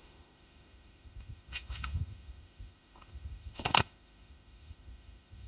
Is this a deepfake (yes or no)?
yes